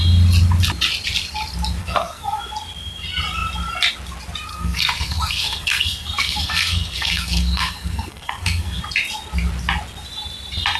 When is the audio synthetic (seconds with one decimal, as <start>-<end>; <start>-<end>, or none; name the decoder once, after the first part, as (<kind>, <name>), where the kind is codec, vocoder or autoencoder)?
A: 1.8-2.4 (codec, SNAC); 4.5-8.8